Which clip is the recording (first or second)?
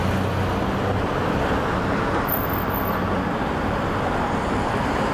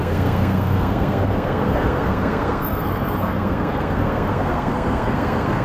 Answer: first